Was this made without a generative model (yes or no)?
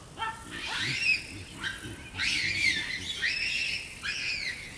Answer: yes